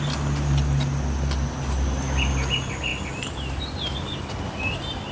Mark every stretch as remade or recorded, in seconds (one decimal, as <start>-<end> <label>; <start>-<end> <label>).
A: 0.0-5.1 recorded